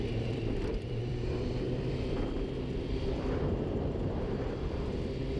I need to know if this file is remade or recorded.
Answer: remade